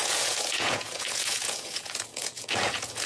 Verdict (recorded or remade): remade